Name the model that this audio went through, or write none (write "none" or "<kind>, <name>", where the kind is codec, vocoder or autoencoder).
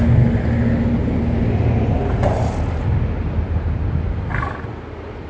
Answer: none